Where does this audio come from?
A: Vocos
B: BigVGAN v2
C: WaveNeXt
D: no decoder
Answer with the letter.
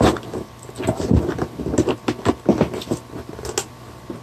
D